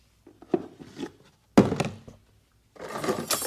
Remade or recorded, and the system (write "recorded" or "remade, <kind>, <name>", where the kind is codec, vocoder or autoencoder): recorded